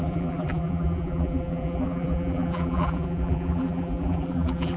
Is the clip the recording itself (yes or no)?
no